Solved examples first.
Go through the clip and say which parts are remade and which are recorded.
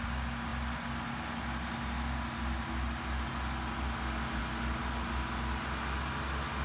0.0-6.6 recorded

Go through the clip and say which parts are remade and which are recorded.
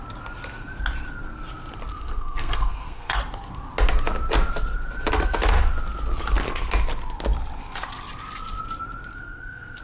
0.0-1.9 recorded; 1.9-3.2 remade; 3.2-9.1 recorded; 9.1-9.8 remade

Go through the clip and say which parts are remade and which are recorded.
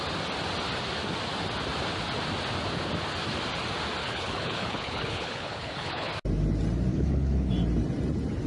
0.0-4.0 recorded; 4.0-6.1 remade; 6.1-6.9 recorded; 6.9-7.5 remade; 7.5-8.5 recorded